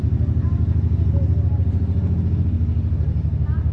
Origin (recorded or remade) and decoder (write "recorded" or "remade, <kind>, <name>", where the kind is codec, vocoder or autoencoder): recorded